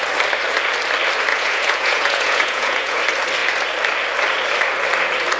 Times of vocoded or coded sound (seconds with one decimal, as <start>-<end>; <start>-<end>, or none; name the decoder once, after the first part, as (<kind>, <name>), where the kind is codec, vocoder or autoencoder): 1.3-3.0 (vocoder, Vocos)